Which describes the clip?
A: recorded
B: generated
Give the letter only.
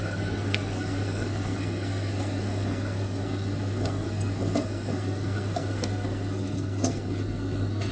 B